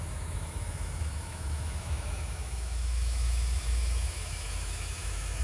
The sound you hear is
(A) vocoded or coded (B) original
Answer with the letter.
A